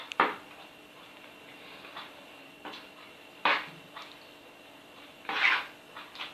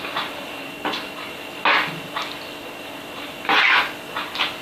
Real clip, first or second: second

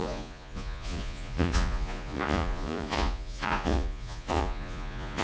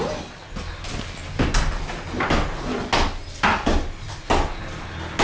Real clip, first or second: second